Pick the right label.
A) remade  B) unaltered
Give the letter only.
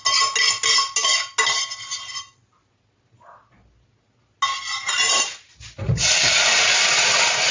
B